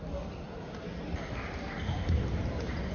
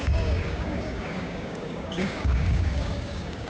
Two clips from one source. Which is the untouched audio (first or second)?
first